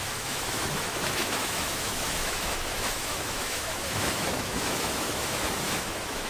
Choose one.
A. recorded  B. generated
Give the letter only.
B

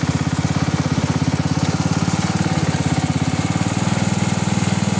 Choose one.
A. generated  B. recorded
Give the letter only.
B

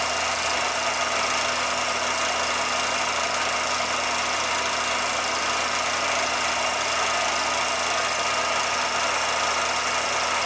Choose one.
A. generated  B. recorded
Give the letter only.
B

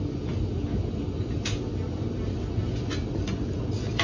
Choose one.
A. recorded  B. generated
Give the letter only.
A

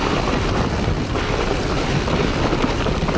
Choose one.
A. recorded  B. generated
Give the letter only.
A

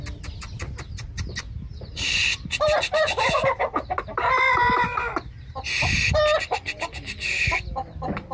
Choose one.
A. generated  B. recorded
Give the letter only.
B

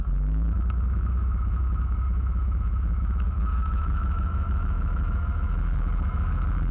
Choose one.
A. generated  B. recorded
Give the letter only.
A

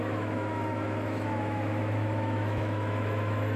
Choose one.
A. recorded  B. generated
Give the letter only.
B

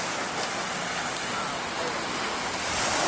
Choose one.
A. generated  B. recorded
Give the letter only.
B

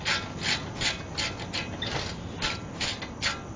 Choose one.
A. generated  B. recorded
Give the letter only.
B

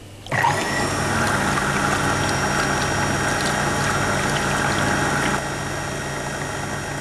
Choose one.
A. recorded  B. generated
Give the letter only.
A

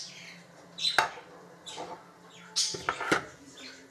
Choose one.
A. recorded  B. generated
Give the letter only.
A